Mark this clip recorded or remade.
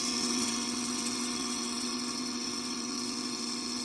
remade